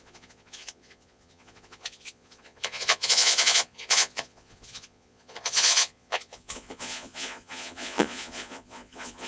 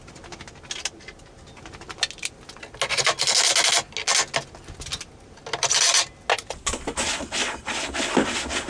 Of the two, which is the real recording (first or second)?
second